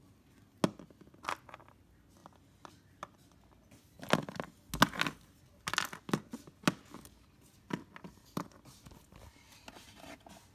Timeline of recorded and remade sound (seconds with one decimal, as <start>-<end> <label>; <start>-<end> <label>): 0.0-10.5 recorded